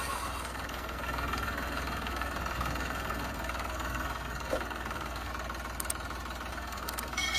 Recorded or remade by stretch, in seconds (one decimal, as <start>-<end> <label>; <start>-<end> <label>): 0.0-5.3 remade; 5.3-6.5 recorded; 6.5-7.4 remade